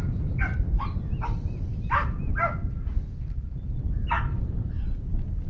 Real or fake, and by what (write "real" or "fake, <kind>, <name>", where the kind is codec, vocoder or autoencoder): real